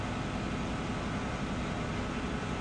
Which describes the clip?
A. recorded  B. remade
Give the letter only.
A